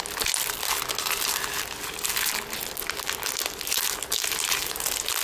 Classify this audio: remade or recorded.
recorded